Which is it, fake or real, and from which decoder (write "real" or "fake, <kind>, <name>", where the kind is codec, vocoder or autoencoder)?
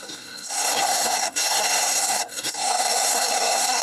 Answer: fake, codec, SNAC